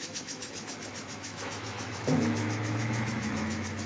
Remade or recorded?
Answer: remade